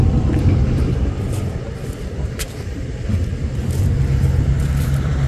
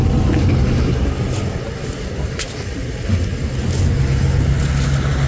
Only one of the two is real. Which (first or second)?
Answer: second